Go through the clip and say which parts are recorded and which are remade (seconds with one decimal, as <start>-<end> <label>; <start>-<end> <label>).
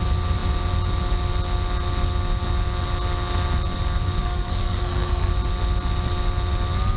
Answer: 0.0-4.2 recorded; 4.2-5.3 remade; 5.3-7.0 recorded